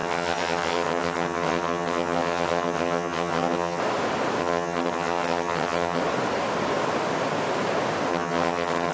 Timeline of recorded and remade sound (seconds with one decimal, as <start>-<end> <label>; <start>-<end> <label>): 0.0-3.8 remade; 3.8-4.4 recorded; 4.4-6.0 remade; 6.0-8.1 recorded; 8.1-8.9 remade